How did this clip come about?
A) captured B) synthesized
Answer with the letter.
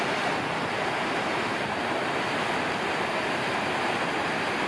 A